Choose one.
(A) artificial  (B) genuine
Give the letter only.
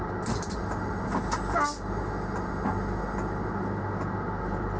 B